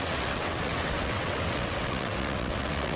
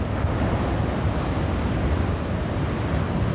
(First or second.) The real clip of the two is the second